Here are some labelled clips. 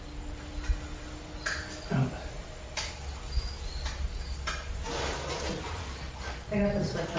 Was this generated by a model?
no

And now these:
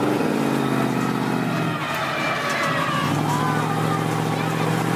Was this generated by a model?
no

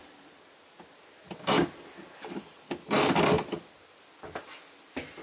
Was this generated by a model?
no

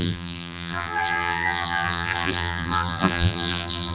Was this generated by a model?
yes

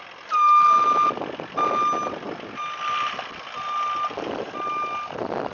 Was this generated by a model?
no